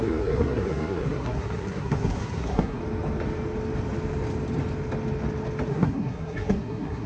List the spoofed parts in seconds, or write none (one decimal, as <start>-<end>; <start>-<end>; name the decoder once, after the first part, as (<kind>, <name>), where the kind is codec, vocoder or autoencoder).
0.0-2.8 (codec, SNAC); 5.7-7.1